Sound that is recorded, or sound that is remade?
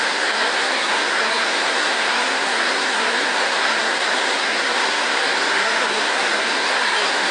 remade